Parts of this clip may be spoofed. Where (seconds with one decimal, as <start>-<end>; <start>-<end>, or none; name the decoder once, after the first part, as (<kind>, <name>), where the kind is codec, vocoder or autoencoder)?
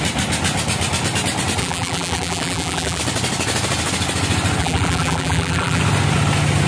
1.6-3.0 (vocoder, BigVGAN v2); 4.6-5.8